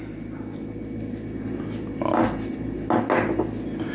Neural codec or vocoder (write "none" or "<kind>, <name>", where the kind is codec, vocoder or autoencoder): none